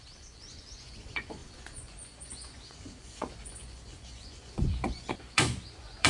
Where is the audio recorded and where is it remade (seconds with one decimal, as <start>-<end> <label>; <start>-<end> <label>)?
0.0-6.1 remade